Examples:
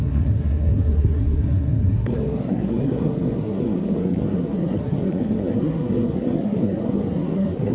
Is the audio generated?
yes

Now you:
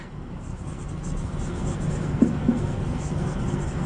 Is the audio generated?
yes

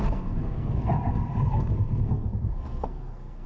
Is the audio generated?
yes